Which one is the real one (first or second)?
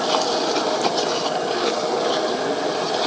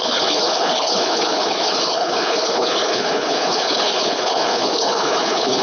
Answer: first